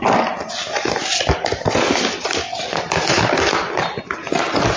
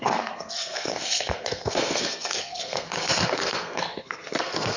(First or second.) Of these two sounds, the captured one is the first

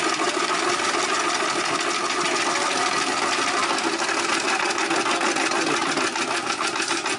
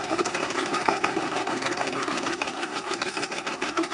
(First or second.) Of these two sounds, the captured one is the first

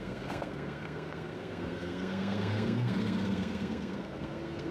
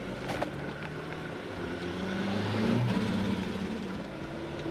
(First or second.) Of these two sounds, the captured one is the second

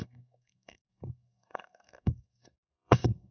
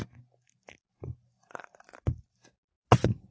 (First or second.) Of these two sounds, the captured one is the second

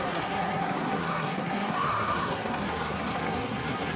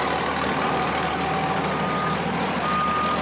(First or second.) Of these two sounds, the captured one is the second